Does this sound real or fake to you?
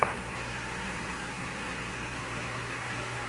fake